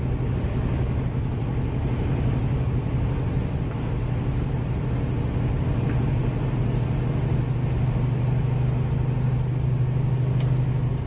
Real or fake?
real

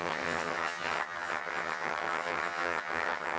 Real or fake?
fake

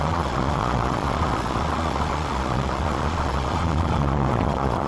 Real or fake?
fake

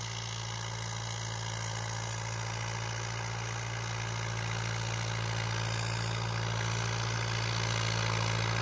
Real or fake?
real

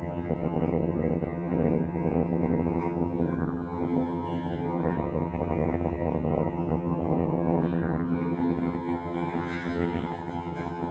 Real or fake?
fake